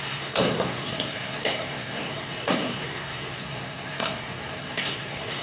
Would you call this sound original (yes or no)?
no